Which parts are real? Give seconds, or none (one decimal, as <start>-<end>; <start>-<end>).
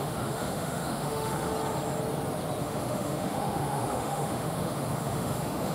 1.5-2.6